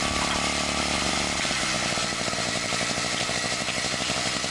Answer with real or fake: real